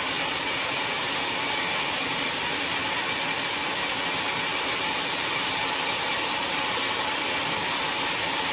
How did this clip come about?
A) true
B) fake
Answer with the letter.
A